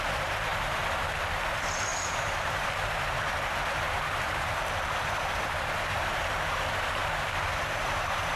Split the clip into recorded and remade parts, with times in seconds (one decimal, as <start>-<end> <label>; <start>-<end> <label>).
0.0-8.4 remade

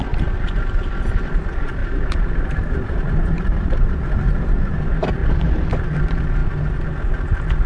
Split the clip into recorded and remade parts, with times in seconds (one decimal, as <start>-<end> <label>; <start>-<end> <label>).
0.0-1.8 recorded; 1.8-4.7 remade; 4.7-7.7 recorded

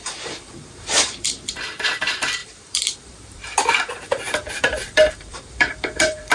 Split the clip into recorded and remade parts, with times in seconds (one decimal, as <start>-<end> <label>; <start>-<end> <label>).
0.0-2.0 remade; 2.0-2.4 recorded; 2.4-6.3 remade